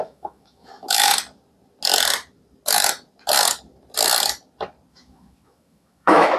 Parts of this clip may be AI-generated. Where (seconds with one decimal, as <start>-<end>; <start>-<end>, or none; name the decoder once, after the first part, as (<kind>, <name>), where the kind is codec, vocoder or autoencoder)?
0.0-1.1 (autoencoder, DAC-VAE); 4.9-6.4